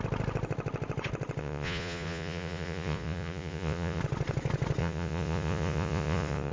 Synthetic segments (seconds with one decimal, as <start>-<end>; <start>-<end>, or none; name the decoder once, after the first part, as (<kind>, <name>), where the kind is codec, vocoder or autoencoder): 1.4-4.0 (vocoder, Vocos); 4.8-6.5

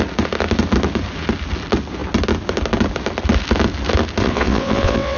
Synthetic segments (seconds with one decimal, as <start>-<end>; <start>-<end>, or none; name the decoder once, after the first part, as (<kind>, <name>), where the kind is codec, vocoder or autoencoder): 4.2-5.2 (vocoder, WaveNeXt)

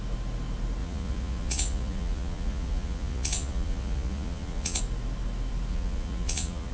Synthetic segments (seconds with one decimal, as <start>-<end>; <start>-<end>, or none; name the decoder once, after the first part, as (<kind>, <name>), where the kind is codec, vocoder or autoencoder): 0.8-4.8 (vocoder, Vocos); 5.7-6.7

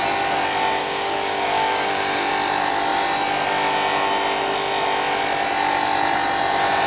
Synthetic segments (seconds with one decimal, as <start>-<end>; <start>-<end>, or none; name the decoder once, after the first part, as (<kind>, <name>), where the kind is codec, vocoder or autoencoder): 0.8-2.3 (codec, DAC)

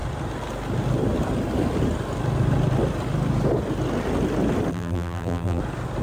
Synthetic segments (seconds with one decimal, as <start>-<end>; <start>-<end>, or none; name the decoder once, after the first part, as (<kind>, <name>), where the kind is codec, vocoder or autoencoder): 4.7-5.6 (vocoder, BigVGAN v2)

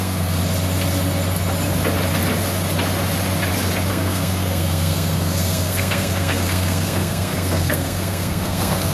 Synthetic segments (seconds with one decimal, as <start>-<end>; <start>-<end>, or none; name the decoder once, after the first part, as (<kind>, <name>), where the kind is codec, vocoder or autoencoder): 0.0-0.4 (codec, SNAC); 3.9-8.9

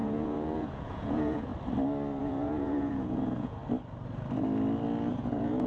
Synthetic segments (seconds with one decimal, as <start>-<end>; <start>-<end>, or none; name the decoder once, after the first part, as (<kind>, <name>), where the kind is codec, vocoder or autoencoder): 0.0-1.5 (vocoder, Vocos); 2.2-3.6; 5.1-5.7